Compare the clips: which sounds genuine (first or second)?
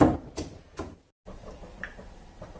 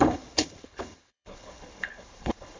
first